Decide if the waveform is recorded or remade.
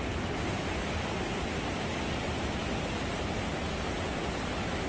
recorded